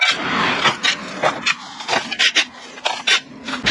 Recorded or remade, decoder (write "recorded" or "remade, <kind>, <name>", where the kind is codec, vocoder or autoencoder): recorded